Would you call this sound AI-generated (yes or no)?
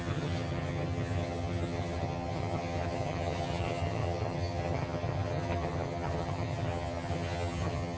yes